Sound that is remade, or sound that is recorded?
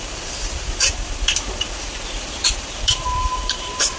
remade